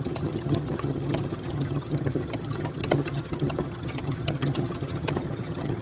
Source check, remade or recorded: remade